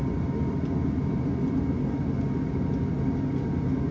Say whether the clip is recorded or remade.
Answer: recorded